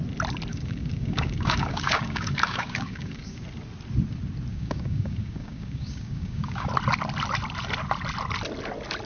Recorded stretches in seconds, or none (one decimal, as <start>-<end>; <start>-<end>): 0.0-0.5; 3.4-4.5; 6.7-9.1